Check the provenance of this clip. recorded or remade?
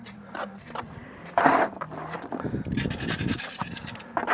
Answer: recorded